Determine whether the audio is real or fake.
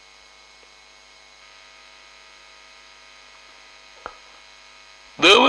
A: real